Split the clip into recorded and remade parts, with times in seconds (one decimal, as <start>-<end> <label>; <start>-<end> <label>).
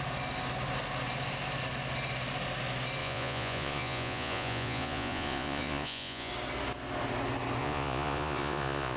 0.0-3.0 recorded; 3.0-6.3 remade; 6.3-7.6 recorded; 7.6-9.0 remade